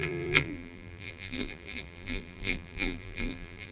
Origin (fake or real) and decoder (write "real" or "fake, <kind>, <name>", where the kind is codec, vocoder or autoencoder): fake, vocoder, BigVGAN v2